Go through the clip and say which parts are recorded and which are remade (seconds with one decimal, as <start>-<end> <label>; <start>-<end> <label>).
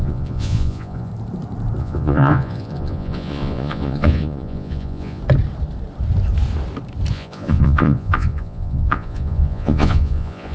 0.0-1.1 remade; 1.1-1.8 recorded; 1.8-5.2 remade; 5.2-7.1 recorded; 7.1-10.5 remade